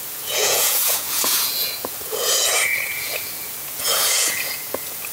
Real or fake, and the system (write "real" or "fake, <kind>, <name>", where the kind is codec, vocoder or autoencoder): fake, vocoder, Vocos